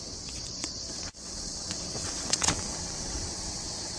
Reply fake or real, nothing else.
fake